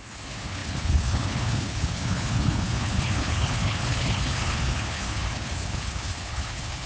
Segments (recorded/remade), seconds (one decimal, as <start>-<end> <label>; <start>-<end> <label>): 0.0-6.9 remade